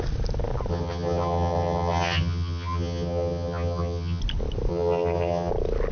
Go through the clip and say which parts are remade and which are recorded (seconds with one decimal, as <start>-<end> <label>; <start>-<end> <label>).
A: 0.0-0.7 recorded; 0.7-4.2 remade; 4.2-4.7 recorded; 4.7-5.5 remade; 5.5-5.9 recorded